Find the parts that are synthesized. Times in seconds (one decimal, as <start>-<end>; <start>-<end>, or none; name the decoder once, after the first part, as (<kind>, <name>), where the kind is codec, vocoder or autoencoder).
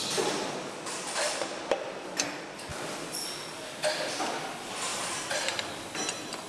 none